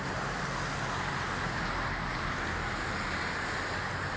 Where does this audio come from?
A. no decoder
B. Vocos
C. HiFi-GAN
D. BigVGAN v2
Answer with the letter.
A